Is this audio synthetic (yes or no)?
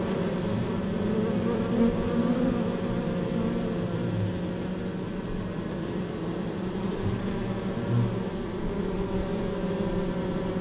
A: no